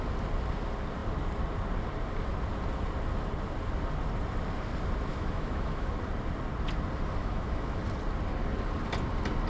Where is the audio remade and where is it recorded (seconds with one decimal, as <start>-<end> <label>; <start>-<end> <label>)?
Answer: 0.0-5.1 recorded; 5.1-5.9 remade; 5.9-7.2 recorded; 7.2-7.8 remade; 7.8-9.5 recorded